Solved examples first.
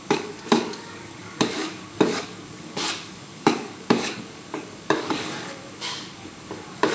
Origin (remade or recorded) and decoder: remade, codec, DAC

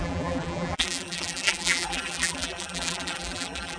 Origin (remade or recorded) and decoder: remade, vocoder, BigVGAN v2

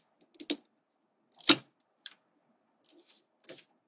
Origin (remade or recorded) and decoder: recorded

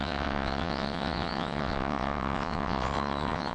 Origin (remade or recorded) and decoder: remade, vocoder, WaveNeXt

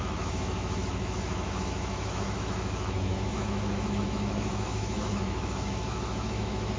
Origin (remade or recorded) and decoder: remade, autoencoder, DAC-VAE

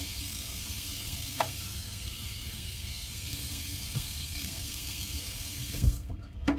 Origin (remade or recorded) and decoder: remade, codec, SNAC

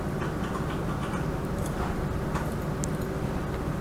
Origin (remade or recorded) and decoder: recorded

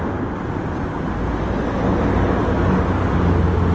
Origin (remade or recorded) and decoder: recorded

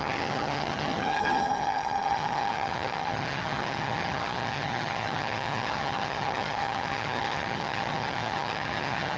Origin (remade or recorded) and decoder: remade, vocoder, HiFi-GAN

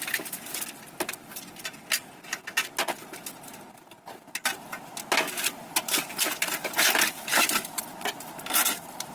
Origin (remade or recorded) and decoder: recorded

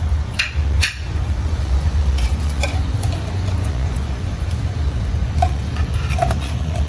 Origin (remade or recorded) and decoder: remade, vocoder, Vocos